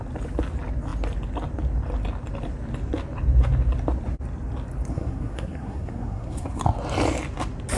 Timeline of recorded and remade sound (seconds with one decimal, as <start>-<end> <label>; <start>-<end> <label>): 0.0-4.9 recorded; 4.9-6.6 remade; 6.6-7.8 recorded